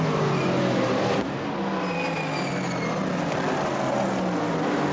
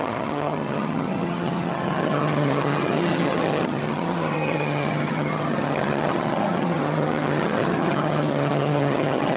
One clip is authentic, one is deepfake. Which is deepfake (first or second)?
second